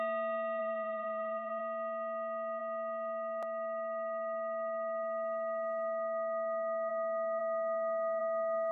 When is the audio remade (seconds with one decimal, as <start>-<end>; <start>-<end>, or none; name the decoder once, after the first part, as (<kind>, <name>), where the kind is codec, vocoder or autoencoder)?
0.6-1.6 (vocoder, BigVGAN v2)